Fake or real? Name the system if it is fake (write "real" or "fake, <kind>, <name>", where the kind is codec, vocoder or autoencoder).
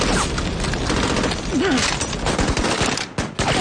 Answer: real